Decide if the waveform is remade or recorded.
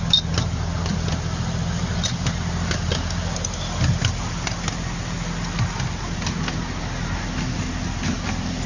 recorded